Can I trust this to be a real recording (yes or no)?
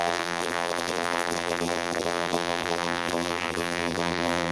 no